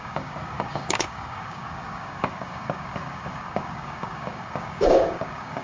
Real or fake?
fake